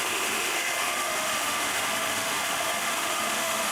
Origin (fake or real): fake